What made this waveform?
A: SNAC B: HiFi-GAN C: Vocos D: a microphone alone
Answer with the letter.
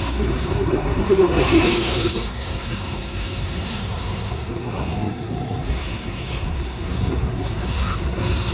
A